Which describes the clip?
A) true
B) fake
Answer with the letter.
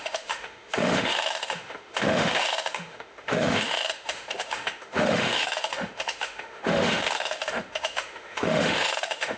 B